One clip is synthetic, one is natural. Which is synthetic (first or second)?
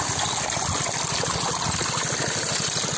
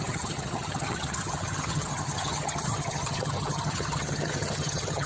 second